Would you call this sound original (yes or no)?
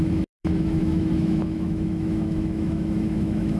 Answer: no